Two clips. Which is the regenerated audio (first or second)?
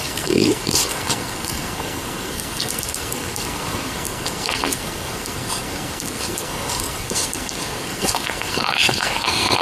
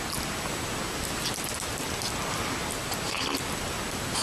first